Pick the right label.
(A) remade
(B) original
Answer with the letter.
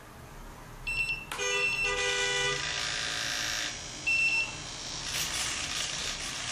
B